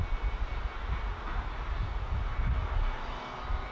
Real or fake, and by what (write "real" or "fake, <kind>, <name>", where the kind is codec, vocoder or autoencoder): real